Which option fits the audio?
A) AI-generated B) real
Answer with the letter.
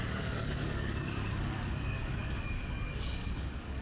A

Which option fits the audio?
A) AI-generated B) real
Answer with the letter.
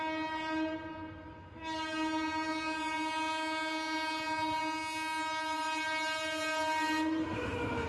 B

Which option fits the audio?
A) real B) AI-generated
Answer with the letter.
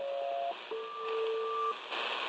A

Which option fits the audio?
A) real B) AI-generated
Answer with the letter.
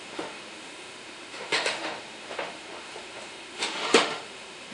B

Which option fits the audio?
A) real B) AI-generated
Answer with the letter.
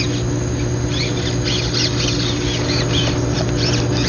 A